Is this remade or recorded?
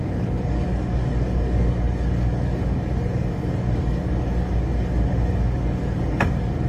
remade